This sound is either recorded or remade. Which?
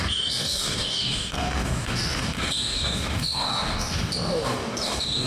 remade